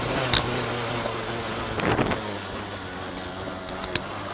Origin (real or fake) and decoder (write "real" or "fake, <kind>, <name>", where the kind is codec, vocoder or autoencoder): real